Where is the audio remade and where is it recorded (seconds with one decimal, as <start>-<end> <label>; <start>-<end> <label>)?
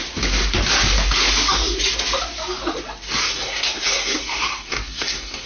0.0-3.2 recorded; 3.2-5.5 remade